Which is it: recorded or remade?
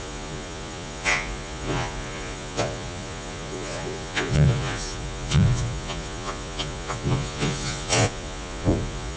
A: remade